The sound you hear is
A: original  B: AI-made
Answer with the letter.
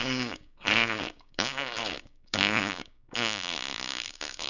B